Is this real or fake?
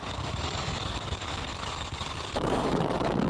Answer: fake